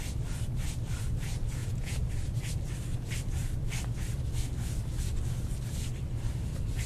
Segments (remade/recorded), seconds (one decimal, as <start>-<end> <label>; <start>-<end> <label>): 0.0-1.6 recorded; 1.6-2.1 remade; 2.1-6.9 recorded